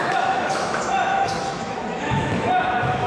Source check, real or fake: fake